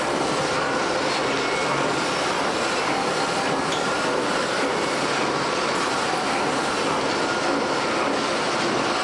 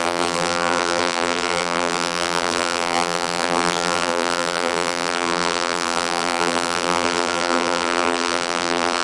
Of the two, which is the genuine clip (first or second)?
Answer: first